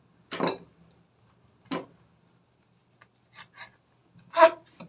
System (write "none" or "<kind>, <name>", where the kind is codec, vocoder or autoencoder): none